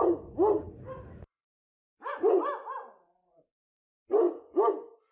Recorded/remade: recorded